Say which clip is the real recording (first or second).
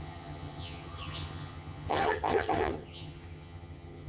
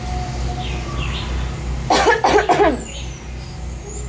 second